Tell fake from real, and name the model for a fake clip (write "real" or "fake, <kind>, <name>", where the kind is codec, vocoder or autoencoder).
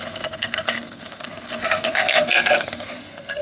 fake, codec, SNAC